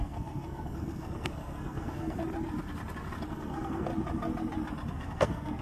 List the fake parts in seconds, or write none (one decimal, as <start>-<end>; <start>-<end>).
0.0-2.2; 3.3-3.9; 4.9-5.6